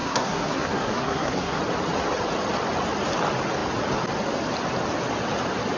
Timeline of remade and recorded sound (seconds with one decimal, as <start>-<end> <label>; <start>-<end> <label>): 0.0-1.6 remade; 1.6-5.8 recorded